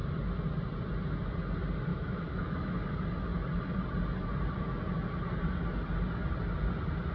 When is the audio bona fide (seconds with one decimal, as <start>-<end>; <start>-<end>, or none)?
0.0-1.9; 2.7-7.1